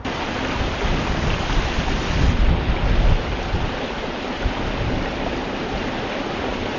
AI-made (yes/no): no